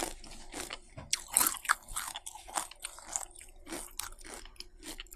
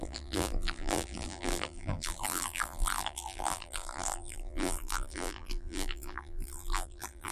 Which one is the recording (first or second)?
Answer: first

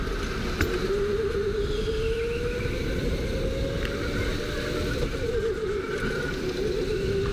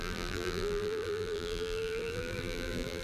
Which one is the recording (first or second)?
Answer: first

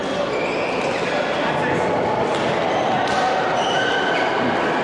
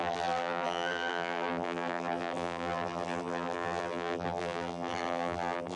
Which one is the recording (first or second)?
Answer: first